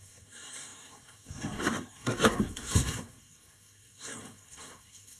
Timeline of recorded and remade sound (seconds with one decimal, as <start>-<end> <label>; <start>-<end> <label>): 0.0-5.2 remade